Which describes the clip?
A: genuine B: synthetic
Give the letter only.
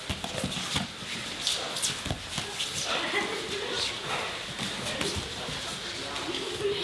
A